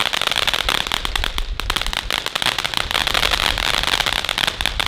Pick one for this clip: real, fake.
real